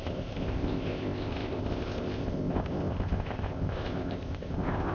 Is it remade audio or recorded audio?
remade